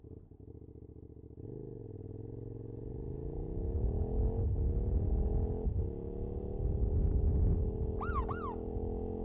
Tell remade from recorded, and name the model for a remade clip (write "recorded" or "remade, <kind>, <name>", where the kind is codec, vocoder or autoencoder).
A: recorded